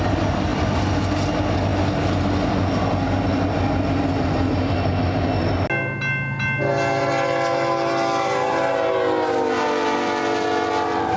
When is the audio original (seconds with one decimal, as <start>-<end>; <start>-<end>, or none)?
0.0-11.2